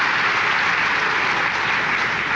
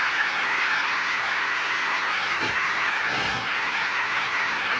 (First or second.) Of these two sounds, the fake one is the second